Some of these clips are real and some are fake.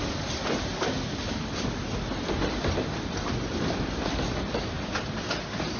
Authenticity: real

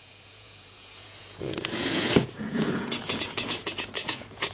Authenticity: fake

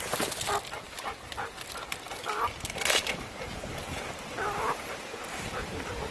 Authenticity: real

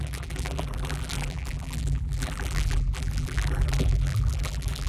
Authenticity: fake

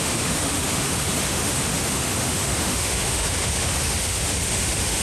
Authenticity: fake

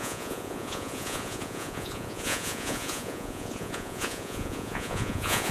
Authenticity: fake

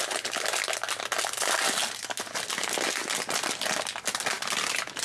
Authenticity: real